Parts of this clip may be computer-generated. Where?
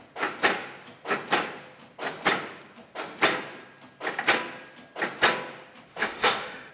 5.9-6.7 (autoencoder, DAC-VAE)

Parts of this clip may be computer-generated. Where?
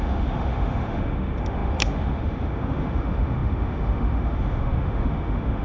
0.0-5.6 (autoencoder, DAC-VAE)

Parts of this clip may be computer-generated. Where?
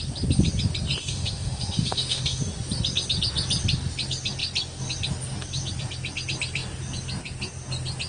1.0-2.4 (autoencoder, DAC-VAE)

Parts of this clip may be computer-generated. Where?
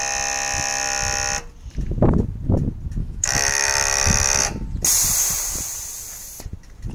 3.0-4.4 (autoencoder, DAC-VAE)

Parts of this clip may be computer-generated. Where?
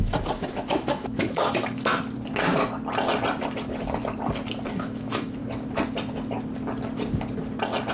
0.0-1.9 (autoencoder, DAC-VAE); 4.7-5.4